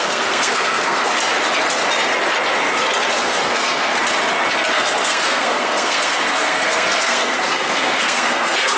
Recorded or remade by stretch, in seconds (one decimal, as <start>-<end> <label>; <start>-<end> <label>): 0.0-1.1 remade; 1.1-3.2 recorded; 3.2-4.0 remade; 4.0-4.7 recorded; 4.7-8.8 remade